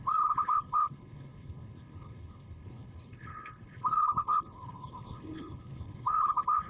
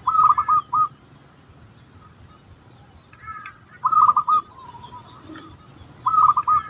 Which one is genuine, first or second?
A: second